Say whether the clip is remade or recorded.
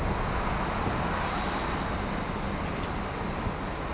recorded